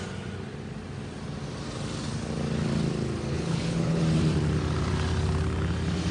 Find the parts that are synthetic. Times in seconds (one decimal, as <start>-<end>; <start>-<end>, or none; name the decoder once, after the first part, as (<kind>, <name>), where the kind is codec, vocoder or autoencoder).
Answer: 3.3-4.0 (codec, HILCodec)

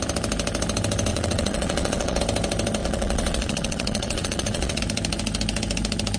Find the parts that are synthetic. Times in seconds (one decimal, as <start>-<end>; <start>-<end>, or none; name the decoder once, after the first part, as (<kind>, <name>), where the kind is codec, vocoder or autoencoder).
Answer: 1.1-2.2 (vocoder, WaveNeXt); 2.8-4.8

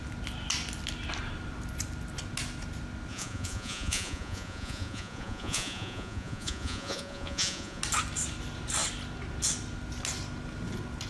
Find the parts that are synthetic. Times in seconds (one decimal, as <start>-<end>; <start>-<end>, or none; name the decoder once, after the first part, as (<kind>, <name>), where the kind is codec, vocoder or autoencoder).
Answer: 3.1-7.8 (vocoder, Vocos)

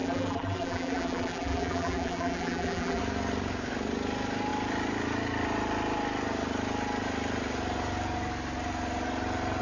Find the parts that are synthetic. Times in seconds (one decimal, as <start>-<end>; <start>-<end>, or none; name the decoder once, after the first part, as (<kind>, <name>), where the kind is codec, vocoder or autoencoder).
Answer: 0.0-3.0 (vocoder, BigVGAN v2)